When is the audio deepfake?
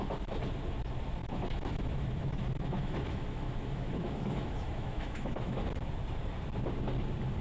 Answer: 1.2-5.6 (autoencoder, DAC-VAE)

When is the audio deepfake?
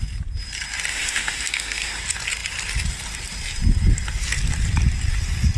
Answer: 0.9-2.0 (autoencoder, DAC-VAE)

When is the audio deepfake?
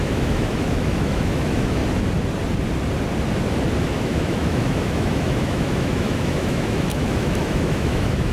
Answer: 0.0-1.8 (autoencoder, DAC-VAE); 3.8-8.3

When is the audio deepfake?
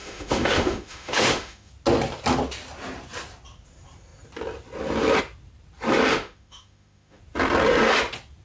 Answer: 0.0-1.7 (autoencoder, DAC-VAE); 6.1-7.2